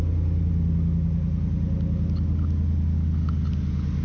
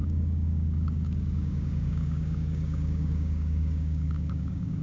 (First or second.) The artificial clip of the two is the second